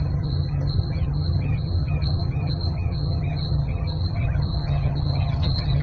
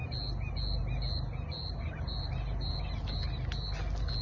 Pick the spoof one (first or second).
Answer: first